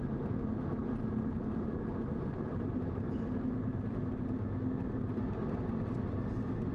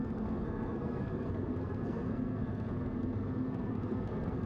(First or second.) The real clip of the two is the first